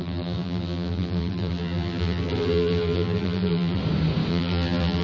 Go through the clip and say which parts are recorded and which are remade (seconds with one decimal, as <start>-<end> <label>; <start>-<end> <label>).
0.0-3.8 remade; 3.8-4.3 recorded; 4.3-5.0 remade